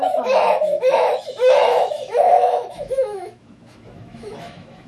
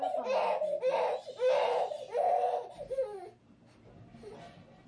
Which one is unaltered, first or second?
second